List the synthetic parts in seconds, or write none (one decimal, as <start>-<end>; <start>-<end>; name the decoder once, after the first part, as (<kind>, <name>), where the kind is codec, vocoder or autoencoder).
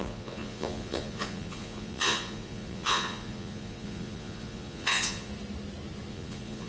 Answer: 0.0-5.3 (vocoder, Vocos); 6.1-6.7